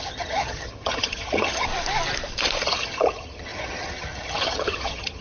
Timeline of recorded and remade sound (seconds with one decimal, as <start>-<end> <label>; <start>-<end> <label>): 0.0-1.7 remade; 1.7-2.6 recorded; 2.6-5.2 remade